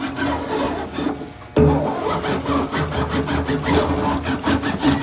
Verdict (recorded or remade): recorded